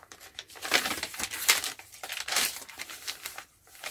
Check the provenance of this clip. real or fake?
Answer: fake